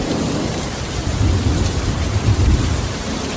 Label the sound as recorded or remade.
remade